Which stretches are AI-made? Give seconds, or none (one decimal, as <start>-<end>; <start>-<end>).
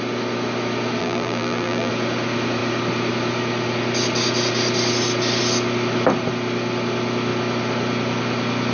1.0-1.9